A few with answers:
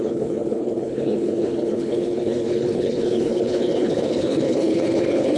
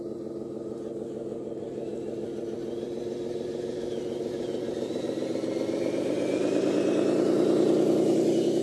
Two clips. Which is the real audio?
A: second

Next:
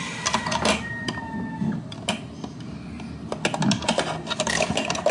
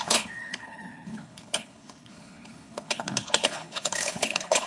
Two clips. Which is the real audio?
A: first